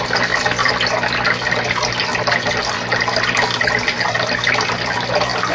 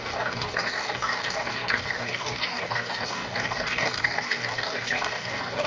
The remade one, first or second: second